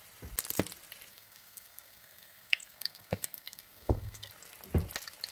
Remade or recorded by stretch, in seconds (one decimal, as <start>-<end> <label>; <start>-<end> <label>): 0.0-1.1 recorded; 1.1-4.3 remade; 4.3-5.3 recorded